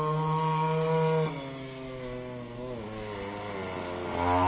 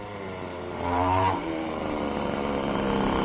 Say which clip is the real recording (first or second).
first